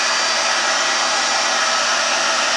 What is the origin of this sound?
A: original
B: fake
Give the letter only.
A